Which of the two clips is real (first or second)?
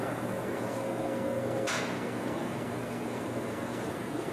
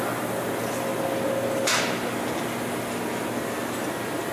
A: second